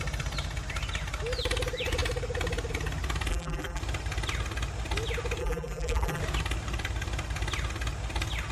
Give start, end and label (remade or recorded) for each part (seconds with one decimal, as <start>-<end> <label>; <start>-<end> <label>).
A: 0.0-3.3 recorded; 3.3-3.8 remade; 3.8-5.4 recorded; 5.4-6.2 remade; 6.2-8.5 recorded